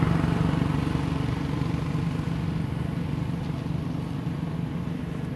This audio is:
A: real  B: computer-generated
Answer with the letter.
A